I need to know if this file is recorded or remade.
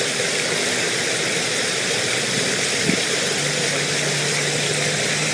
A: recorded